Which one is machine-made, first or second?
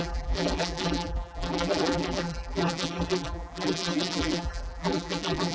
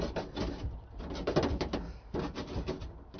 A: first